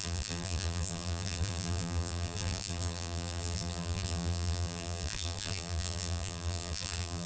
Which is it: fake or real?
fake